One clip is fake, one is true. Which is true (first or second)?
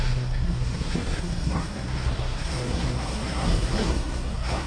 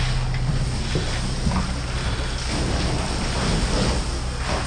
second